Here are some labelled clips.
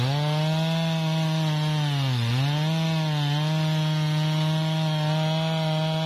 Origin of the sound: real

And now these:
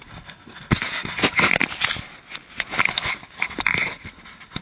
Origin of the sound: real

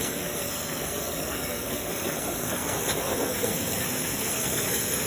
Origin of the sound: fake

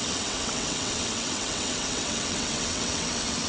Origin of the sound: fake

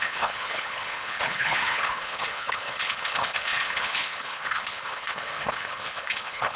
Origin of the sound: fake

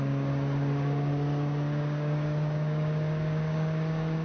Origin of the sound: fake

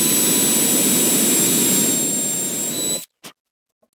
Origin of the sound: real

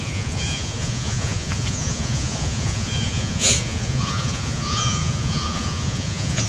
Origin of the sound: fake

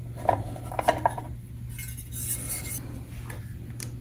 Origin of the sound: real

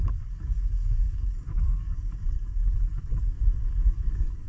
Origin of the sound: fake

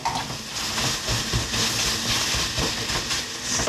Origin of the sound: real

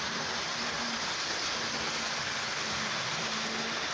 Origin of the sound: real